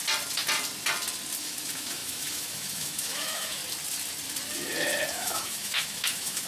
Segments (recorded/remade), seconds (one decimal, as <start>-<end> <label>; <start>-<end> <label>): 0.0-1.4 recorded; 1.4-3.6 remade; 3.6-5.1 recorded; 5.1-6.5 remade